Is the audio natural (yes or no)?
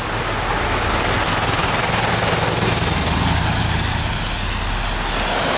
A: yes